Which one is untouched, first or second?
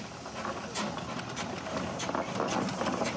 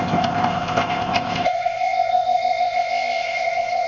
first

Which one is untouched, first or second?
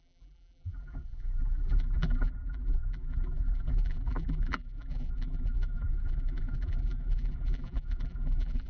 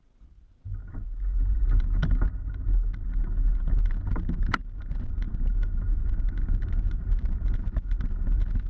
second